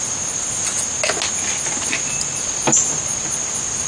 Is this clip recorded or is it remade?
recorded